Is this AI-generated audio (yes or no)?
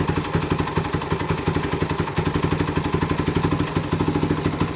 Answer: no